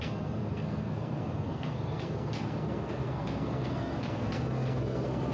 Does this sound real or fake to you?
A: fake